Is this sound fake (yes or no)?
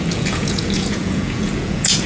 yes